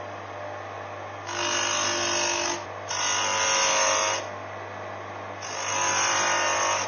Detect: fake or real real